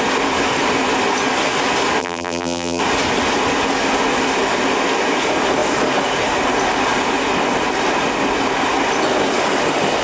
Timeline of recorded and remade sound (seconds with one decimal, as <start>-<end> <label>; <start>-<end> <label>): 0.0-2.0 recorded; 2.0-2.8 remade; 2.8-10.0 recorded